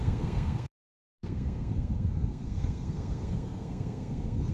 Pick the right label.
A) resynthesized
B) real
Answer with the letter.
A